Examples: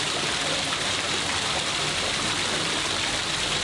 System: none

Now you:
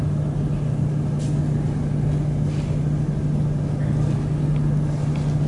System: none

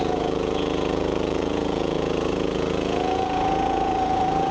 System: vocoder, Vocos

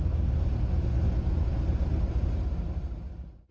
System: none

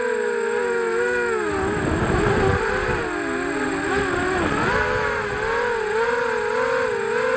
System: none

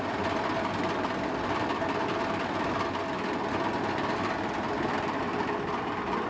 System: none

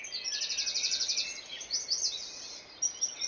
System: none